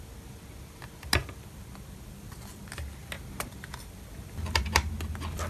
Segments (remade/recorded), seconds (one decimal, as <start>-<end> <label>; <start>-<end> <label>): 0.0-1.2 recorded; 1.2-2.6 remade; 2.6-3.0 recorded; 3.0-4.6 remade; 4.6-5.5 recorded

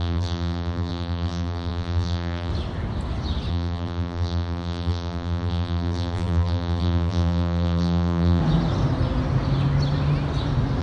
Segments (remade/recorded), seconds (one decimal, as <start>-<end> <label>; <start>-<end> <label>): 0.0-2.5 remade; 2.5-3.5 recorded; 3.5-8.4 remade; 8.4-10.8 recorded

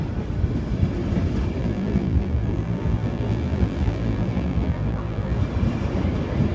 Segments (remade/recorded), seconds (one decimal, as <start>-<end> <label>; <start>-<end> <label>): 0.0-1.6 recorded; 1.6-5.4 remade; 5.4-6.5 recorded

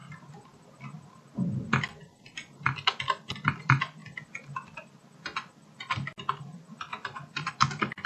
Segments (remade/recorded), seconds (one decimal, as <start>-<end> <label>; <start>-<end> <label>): 0.0-0.6 remade; 0.6-6.9 recorded; 6.9-7.5 remade; 7.5-8.1 recorded

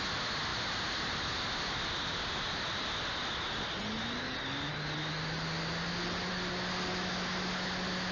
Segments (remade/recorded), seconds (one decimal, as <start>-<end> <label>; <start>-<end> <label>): 0.0-0.5 recorded; 0.5-3.0 remade; 3.0-8.1 recorded

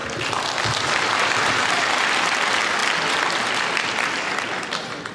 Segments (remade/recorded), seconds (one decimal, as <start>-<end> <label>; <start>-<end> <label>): 0.0-1.5 remade; 1.5-2.8 recorded; 2.8-4.6 remade; 4.6-5.1 recorded